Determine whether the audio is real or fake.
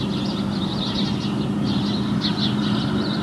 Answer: real